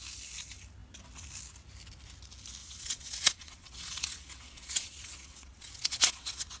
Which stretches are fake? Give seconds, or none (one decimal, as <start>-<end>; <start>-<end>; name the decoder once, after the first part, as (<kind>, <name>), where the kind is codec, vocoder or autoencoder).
2.6-6.6 (vocoder, WaveNeXt)